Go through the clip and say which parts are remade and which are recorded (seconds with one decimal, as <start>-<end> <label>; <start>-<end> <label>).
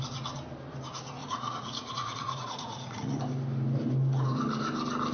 0.0-1.2 recorded; 1.2-3.2 remade; 3.2-5.1 recorded